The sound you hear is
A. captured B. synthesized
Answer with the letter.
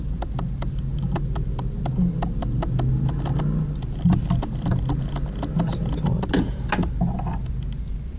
A